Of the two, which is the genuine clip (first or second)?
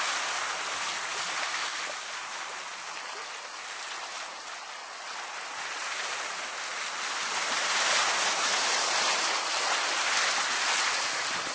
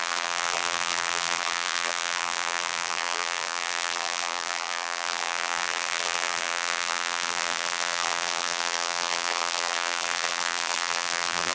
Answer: first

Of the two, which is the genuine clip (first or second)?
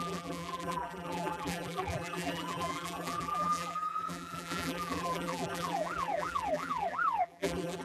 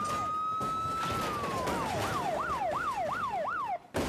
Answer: second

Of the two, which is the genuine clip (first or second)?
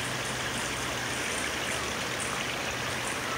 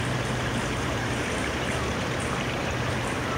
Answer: first